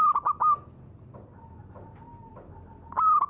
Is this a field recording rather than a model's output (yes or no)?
yes